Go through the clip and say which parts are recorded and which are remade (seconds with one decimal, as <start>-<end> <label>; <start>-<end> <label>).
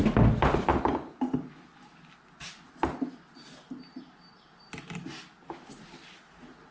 0.0-6.7 recorded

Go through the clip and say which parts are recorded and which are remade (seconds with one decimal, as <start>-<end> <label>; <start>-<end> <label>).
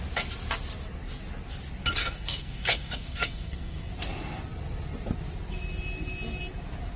0.0-2.0 recorded; 2.0-3.9 remade; 3.9-7.0 recorded